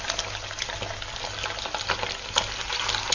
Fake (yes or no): no